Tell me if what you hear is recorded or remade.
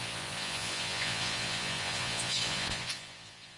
remade